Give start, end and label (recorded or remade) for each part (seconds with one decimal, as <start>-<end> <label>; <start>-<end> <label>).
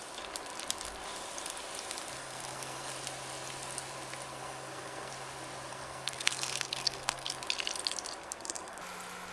0.0-2.2 recorded; 2.2-2.9 remade; 2.9-4.3 recorded; 4.3-5.1 remade; 5.1-5.7 recorded; 5.7-7.3 remade; 7.3-8.2 recorded; 8.2-8.8 remade; 8.8-9.3 recorded